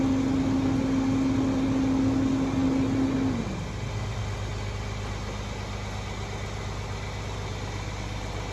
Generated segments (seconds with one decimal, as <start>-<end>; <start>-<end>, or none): none